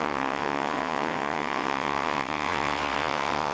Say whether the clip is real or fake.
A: fake